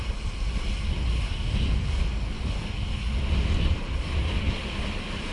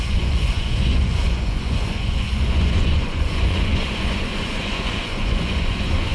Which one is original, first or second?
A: first